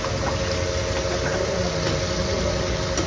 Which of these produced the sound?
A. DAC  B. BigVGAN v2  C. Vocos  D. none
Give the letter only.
D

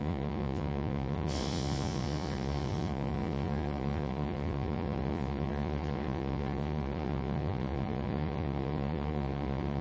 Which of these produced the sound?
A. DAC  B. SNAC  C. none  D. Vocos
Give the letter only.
D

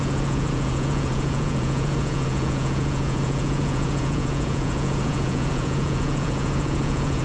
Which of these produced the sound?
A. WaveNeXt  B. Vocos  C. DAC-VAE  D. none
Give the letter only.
B